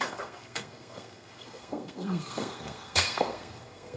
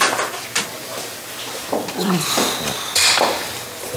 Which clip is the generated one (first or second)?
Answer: first